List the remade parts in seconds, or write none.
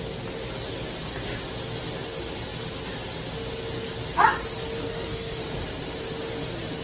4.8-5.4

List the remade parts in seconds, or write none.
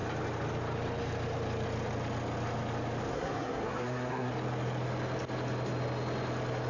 3.1-4.3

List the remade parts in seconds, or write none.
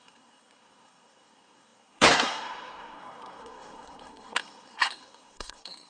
0.0-5.9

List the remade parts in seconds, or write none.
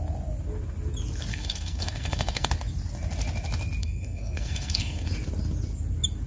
1.3-2.5; 3.8-5.1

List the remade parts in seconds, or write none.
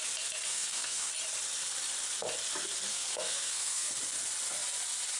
0.5-1.1; 2.9-3.9